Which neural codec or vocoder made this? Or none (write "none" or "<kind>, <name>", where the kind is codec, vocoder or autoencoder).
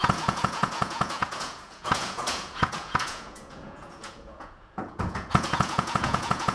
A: vocoder, Vocos